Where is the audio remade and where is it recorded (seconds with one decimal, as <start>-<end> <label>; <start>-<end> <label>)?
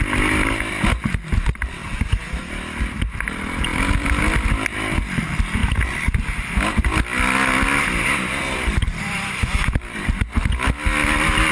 0.0-11.5 recorded